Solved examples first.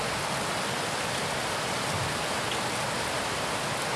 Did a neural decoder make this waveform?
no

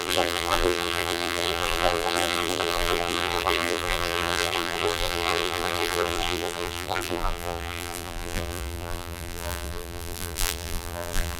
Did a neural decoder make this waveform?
yes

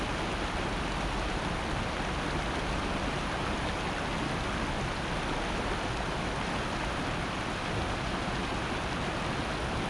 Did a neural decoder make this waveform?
no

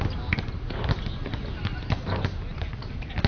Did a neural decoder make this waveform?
no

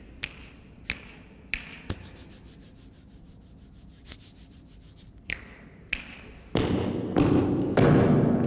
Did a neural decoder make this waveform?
no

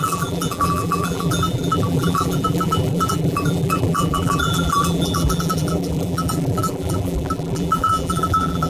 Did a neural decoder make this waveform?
yes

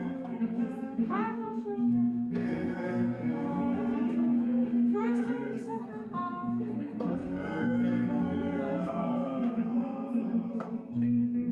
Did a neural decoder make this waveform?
yes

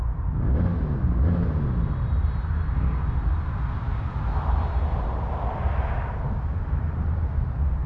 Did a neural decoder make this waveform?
no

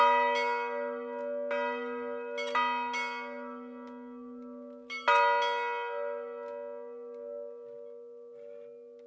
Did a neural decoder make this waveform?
no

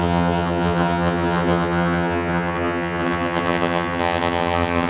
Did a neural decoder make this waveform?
yes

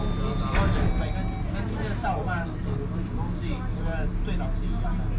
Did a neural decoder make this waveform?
no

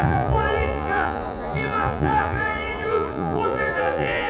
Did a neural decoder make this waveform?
yes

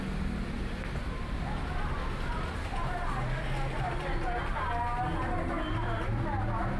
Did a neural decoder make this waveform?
no